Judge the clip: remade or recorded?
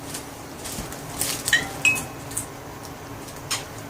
recorded